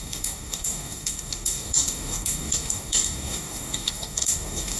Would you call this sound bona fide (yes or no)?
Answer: no